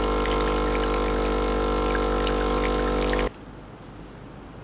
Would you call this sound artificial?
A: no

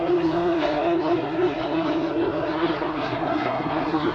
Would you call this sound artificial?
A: yes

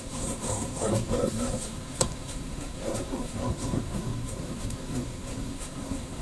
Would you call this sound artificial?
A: yes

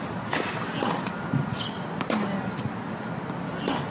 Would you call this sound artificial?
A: no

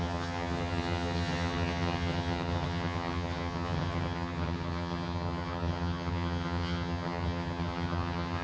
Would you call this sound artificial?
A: yes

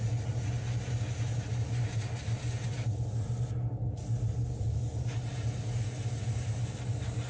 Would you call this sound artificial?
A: no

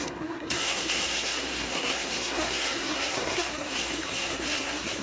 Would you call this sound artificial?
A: yes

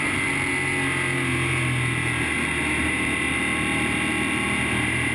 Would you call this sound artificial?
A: no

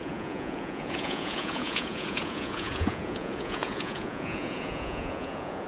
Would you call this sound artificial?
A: yes